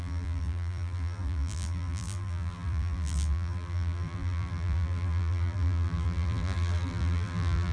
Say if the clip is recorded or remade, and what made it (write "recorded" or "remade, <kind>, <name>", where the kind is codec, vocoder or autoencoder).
remade, vocoder, BigVGAN v2